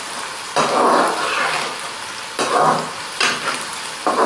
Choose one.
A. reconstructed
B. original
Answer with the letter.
B